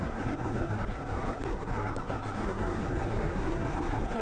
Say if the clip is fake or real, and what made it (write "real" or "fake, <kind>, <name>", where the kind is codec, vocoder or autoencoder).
fake, codec, SNAC